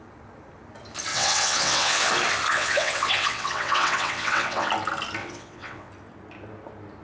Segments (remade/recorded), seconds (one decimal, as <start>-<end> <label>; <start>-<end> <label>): 0.0-1.1 recorded; 1.1-2.1 remade; 2.1-2.5 recorded; 2.5-4.7 remade; 4.7-5.2 recorded; 5.2-5.9 remade; 5.9-7.0 recorded